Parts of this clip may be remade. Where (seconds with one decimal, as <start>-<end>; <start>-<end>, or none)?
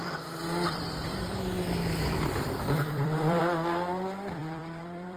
1.8-3.4; 4.4-5.2